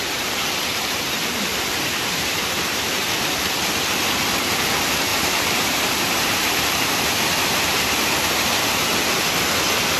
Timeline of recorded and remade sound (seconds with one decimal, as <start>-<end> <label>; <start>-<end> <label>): 0.0-1.5 recorded; 1.5-3.5 remade; 3.5-5.1 recorded; 5.1-8.3 remade; 8.3-10.0 recorded